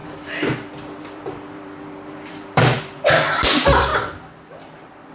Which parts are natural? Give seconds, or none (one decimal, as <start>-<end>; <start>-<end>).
3.9-5.1